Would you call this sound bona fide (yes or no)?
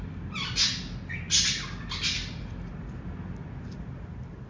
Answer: yes